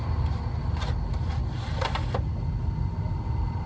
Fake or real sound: real